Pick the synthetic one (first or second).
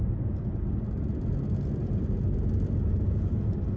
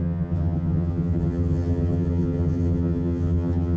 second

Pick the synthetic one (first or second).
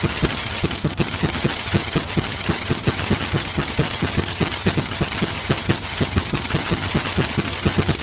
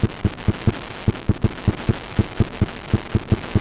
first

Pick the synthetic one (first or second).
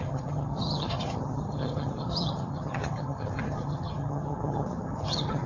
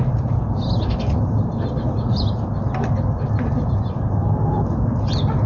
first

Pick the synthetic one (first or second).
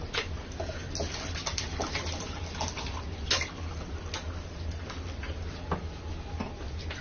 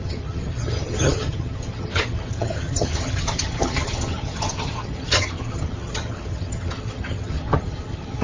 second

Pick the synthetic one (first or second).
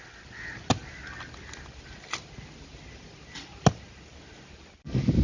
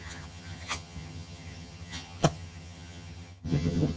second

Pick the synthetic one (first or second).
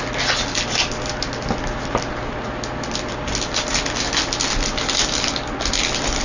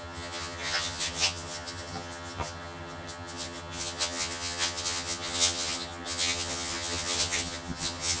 second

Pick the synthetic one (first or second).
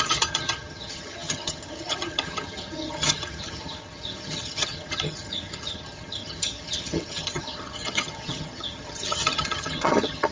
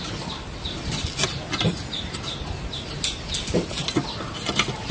first